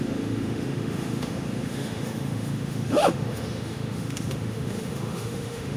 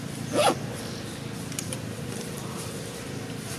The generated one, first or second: first